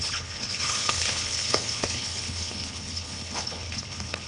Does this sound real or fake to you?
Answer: fake